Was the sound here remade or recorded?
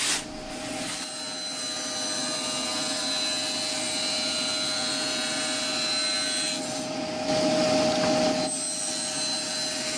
recorded